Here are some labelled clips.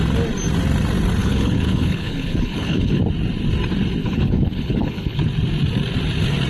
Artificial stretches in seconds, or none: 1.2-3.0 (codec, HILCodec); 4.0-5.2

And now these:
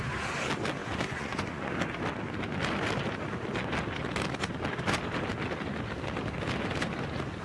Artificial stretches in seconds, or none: 0.8-1.7 (vocoder, Vocos)

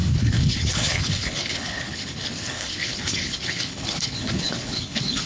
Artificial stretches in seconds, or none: 0.0-5.3 (codec, HILCodec)

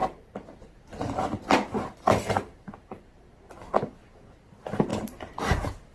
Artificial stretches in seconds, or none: 0.0-3.5 (vocoder, BigVGAN v2); 4.9-5.4

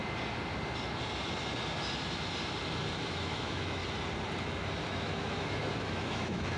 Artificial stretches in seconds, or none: 3.1-3.8 (autoencoder, DAC-VAE); 4.9-6.6

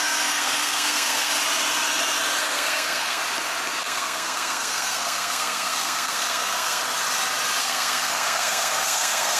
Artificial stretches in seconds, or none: 0.0-1.3 (codec, SNAC); 2.4-3.2; 3.8-6.8; 7.6-9.4

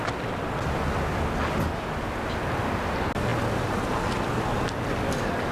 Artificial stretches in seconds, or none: none

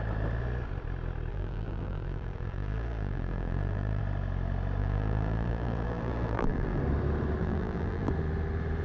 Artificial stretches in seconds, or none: 1.3-4.0 (vocoder, BigVGAN v2); 4.8-6.8; 7.4-8.1